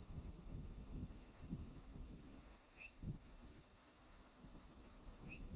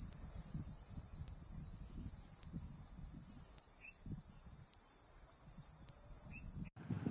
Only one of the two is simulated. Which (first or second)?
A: first